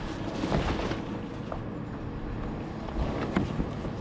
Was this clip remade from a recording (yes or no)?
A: no